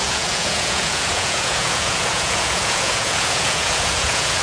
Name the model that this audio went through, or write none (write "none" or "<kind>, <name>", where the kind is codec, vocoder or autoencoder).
vocoder, Vocos